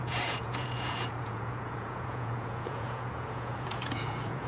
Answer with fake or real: fake